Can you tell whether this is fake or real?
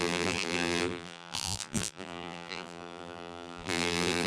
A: fake